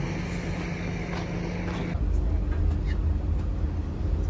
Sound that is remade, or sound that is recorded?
recorded